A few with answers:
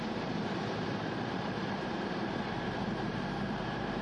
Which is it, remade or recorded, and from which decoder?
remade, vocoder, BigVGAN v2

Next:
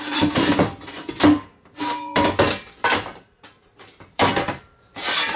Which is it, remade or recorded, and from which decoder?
remade, vocoder, BigVGAN v2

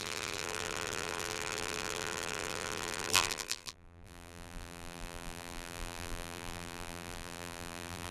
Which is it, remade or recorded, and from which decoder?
remade, vocoder, BigVGAN v2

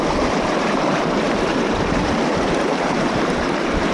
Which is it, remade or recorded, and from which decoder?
remade, vocoder, BigVGAN v2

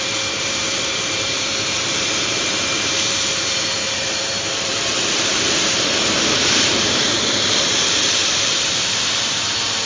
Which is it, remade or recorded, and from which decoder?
remade, vocoder, BigVGAN v2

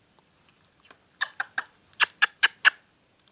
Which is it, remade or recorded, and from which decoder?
remade, vocoder, BigVGAN v2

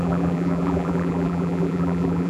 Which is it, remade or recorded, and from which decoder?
remade, vocoder, BigVGAN v2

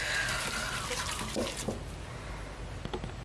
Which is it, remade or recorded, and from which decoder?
recorded